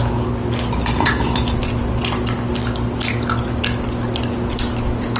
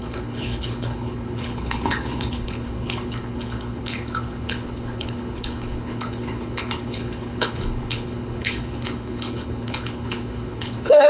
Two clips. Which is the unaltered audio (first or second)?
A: first